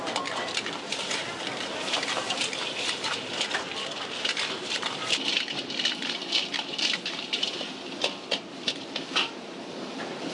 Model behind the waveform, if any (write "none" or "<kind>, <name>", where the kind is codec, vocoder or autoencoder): vocoder, BigVGAN v2